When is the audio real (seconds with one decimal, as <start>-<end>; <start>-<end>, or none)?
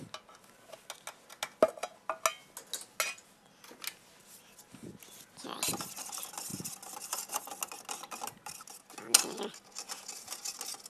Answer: 0.0-10.9